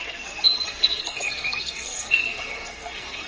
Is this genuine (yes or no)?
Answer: no